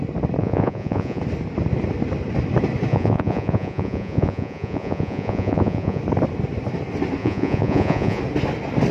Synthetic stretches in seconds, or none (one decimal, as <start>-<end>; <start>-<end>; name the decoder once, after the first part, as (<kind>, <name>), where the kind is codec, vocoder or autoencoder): 0.4-1.2 (vocoder, Vocos); 2.9-6.0; 7.2-8.2